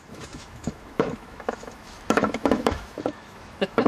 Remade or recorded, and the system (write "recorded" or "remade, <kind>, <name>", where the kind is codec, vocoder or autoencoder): remade, autoencoder, DAC-VAE